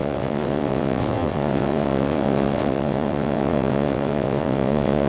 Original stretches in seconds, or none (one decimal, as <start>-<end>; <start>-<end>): none